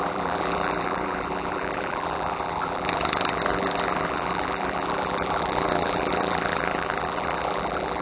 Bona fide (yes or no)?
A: no